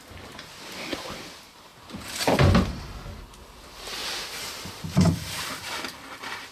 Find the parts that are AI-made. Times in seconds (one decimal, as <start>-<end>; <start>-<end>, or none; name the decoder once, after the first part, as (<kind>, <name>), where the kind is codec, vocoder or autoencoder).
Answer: none